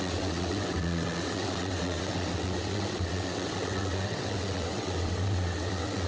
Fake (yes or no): yes